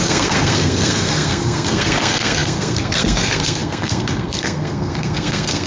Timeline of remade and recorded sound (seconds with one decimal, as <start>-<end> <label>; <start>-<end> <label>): 0.0-5.7 remade